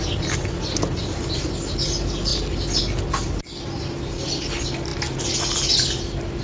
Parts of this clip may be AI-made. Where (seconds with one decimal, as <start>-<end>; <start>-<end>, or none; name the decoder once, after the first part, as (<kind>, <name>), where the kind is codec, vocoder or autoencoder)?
none

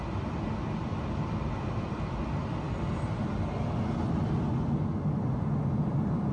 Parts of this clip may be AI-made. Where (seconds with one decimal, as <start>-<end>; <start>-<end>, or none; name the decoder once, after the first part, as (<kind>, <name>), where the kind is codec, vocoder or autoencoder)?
none

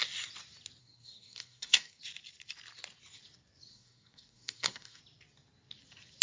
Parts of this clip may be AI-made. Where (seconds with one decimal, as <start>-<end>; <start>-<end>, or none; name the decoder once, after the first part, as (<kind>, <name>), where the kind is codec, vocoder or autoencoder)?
0.8-2.0 (codec, SNAC); 3.7-5.0

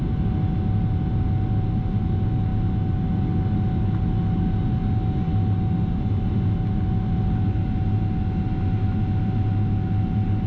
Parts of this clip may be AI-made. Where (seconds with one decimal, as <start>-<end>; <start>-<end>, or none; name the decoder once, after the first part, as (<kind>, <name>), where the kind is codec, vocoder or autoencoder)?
none

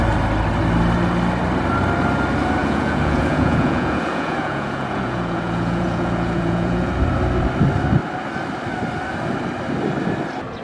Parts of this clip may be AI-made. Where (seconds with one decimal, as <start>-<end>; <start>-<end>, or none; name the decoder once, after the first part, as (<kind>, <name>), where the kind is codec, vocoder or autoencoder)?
2.6-6.9 (vocoder, Vocos)

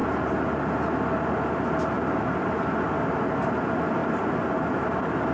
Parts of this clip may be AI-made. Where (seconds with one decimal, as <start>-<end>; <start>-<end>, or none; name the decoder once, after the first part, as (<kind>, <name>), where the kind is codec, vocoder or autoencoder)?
none

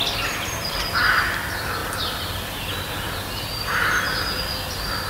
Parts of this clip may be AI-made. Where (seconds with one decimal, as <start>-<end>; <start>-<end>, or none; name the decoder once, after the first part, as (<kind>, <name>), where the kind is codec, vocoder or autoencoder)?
none